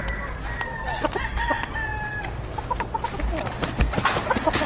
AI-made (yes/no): no